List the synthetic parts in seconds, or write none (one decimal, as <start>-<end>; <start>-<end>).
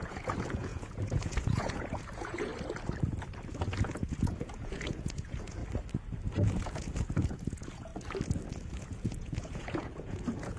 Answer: 0.0-2.5; 3.4-5.6; 6.5-7.9; 8.7-10.6